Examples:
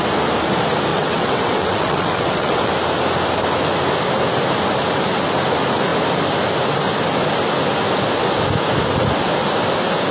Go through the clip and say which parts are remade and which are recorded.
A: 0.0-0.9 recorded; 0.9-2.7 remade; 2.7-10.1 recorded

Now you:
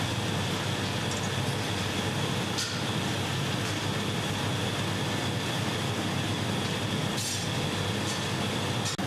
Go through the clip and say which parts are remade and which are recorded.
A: 0.0-9.1 recorded

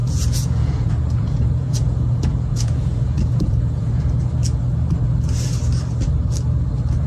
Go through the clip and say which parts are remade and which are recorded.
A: 0.0-4.3 remade; 4.3-7.1 recorded

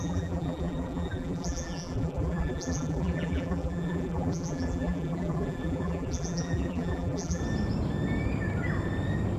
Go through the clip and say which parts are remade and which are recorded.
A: 0.0-7.4 remade; 7.4-9.4 recorded

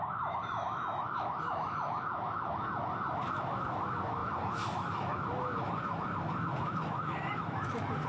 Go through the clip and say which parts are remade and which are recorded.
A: 0.0-2.8 remade; 2.8-3.4 recorded; 3.4-8.1 remade

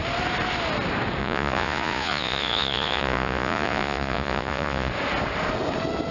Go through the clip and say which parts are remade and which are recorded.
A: 0.0-1.2 recorded; 1.2-4.9 remade; 4.9-6.1 recorded

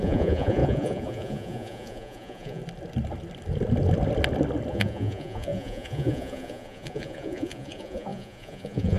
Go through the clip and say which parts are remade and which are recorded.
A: 0.0-2.6 remade; 2.6-4.7 recorded; 4.7-9.0 remade